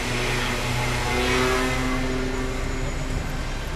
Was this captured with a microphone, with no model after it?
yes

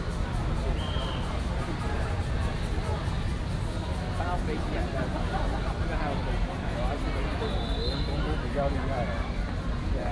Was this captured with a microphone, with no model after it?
yes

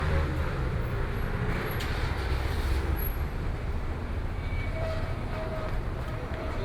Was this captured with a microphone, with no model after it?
no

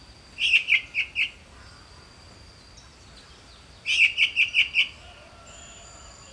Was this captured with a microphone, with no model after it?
yes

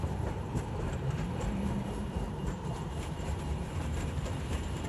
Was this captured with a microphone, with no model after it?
no